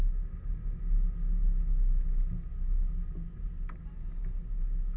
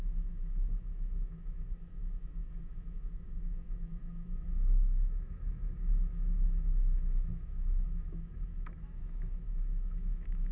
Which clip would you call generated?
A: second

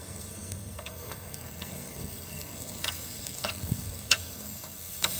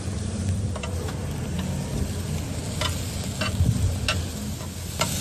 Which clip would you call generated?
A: first